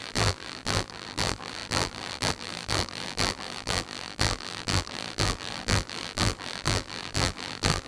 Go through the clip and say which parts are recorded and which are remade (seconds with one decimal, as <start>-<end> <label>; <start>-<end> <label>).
0.0-7.9 remade